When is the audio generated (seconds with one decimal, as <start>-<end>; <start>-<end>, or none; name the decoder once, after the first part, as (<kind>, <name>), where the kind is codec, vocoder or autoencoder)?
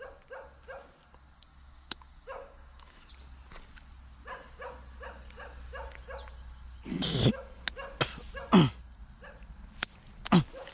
1.5-3.1 (autoencoder, DAC-VAE)